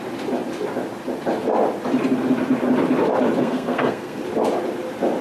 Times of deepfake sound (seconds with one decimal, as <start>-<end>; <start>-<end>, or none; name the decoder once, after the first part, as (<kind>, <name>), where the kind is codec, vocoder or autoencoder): 3.4-4.2 (codec, SNAC)